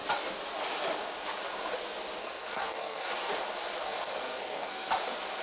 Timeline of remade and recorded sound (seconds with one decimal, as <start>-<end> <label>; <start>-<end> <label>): 0.0-2.2 recorded; 2.2-3.1 remade; 3.1-3.8 recorded; 3.8-4.9 remade; 4.9-5.4 recorded